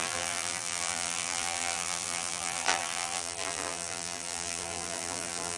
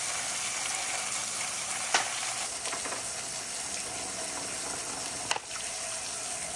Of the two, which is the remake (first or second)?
first